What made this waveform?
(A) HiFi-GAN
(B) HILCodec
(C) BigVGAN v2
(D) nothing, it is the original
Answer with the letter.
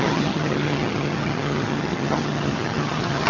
A